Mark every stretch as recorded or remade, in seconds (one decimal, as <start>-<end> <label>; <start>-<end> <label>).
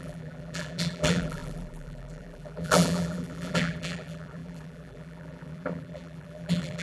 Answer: 0.0-6.8 remade